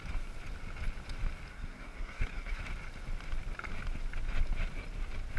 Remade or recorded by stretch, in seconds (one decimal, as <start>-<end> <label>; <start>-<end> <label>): 0.0-1.5 recorded; 1.5-2.6 remade; 2.6-5.4 recorded